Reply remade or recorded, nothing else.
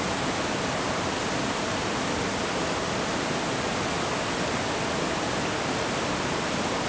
recorded